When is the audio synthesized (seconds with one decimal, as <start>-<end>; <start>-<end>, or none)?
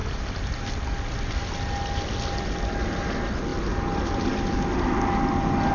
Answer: none